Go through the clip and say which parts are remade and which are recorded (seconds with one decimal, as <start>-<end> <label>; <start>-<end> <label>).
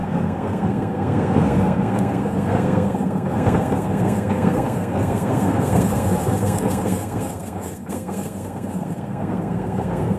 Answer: 0.0-10.2 remade